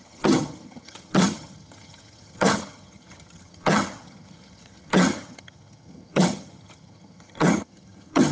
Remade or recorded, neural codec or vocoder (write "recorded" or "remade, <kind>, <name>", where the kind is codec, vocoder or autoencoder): remade, vocoder, HiFi-GAN